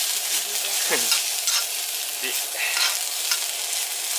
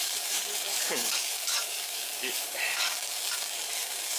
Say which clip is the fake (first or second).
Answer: second